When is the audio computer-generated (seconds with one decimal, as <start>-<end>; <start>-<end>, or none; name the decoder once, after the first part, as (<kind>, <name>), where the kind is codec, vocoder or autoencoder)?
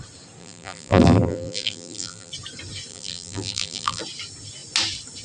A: 0.4-2.3 (vocoder, BigVGAN v2); 2.9-4.0